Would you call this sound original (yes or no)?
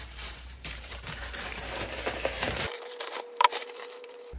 no